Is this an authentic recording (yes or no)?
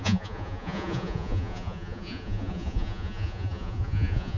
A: no